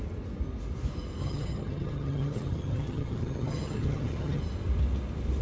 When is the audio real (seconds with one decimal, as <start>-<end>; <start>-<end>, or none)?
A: 0.0-1.2; 4.4-5.4

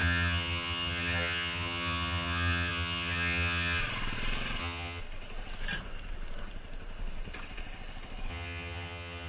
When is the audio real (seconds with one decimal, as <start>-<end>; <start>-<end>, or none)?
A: 3.8-4.6; 5.0-8.3

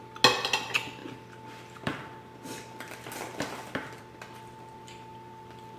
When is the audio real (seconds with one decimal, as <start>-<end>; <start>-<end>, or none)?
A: 0.0-1.0; 4.0-5.1

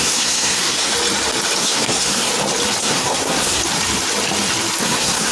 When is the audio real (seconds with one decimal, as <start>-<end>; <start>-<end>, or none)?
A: 0.9-1.6; 2.3-2.8; 3.6-4.8

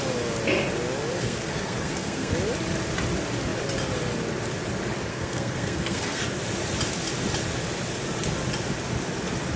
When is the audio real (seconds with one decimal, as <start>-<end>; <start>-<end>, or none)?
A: 0.0-1.2; 2.3-5.1; 6.2-9.6

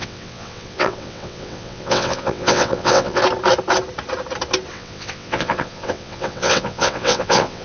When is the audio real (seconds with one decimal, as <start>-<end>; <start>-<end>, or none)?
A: 3.2-4.7

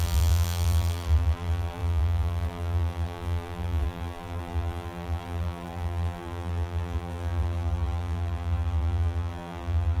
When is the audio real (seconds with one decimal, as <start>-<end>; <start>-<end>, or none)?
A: none

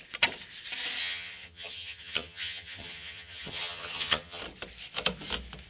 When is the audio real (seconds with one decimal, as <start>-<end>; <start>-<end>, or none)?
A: 0.0-1.0; 4.4-5.7